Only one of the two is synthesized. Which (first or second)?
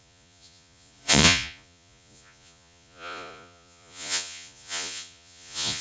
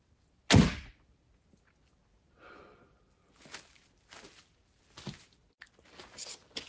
first